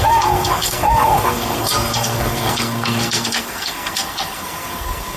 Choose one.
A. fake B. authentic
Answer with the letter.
A